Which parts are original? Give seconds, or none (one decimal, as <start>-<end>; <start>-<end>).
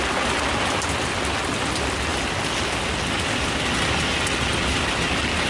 0.0-5.5